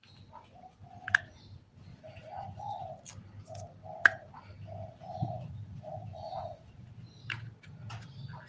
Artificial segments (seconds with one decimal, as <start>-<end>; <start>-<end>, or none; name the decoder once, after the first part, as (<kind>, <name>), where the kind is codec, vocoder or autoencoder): 1.9-2.8 (vocoder, Vocos); 4.8-6.9